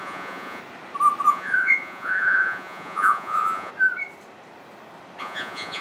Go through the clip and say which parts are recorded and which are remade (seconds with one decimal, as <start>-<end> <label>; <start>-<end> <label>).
0.0-0.6 remade; 0.6-1.3 recorded; 1.3-3.7 remade; 3.7-5.2 recorded; 5.2-5.8 remade